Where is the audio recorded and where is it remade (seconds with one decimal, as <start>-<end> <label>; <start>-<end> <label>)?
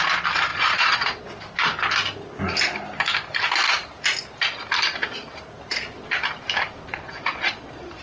0.0-0.5 recorded; 0.5-1.3 remade; 1.3-6.9 recorded; 6.9-8.0 remade